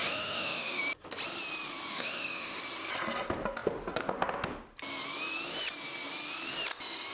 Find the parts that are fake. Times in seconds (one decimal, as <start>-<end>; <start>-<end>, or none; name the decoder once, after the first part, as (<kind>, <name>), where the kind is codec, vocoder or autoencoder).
0.0-0.8 (autoencoder, DAC-VAE); 1.9-2.6